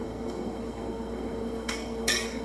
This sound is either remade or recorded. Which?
remade